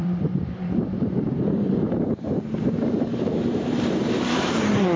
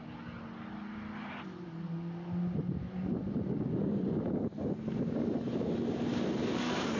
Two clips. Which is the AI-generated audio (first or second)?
first